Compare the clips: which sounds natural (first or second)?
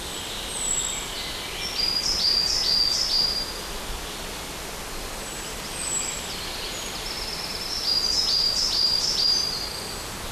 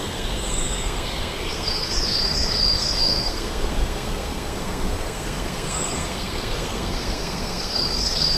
first